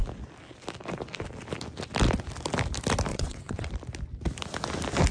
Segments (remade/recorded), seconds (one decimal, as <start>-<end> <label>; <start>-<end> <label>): 0.0-3.1 recorded; 3.1-3.7 remade; 3.7-5.1 recorded